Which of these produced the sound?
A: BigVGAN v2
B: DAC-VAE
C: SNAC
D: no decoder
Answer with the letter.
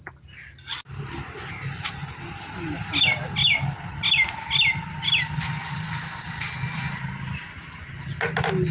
D